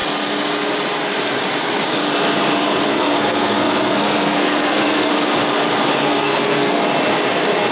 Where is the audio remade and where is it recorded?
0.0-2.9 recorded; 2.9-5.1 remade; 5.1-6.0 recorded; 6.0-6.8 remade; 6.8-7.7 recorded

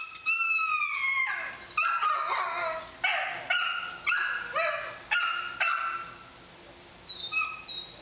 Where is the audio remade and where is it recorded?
0.0-8.0 recorded